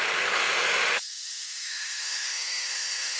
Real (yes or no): no